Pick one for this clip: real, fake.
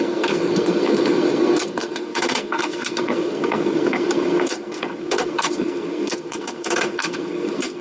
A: fake